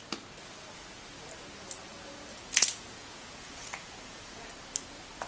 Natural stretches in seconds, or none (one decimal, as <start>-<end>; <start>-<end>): 0.0-2.3; 4.5-5.3